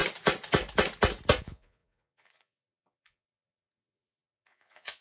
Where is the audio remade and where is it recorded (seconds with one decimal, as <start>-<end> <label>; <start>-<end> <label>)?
0.0-1.4 recorded; 1.4-5.0 remade